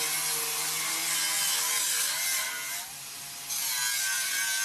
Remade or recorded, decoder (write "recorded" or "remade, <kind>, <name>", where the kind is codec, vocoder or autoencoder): recorded